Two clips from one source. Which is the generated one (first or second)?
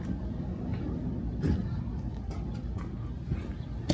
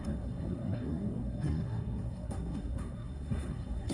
second